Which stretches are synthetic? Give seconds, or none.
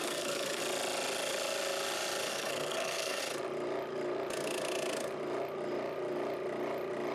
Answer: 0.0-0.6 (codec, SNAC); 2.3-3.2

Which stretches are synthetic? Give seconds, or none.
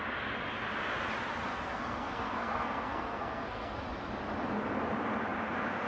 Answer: 1.5-3.8 (codec, SNAC)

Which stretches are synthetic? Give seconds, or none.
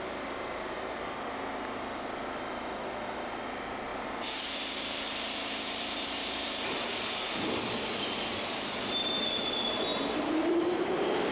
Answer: 3.9-6.9 (vocoder, BigVGAN v2); 9.9-11.3